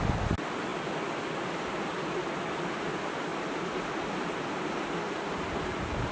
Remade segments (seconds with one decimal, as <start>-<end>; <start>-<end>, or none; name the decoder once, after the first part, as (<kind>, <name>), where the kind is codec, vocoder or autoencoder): none